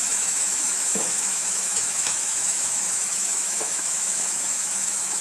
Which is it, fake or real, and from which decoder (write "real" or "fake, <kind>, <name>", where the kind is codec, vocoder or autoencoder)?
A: fake, autoencoder, DAC-VAE